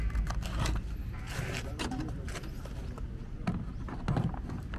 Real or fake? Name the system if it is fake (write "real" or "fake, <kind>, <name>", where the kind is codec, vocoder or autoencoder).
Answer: real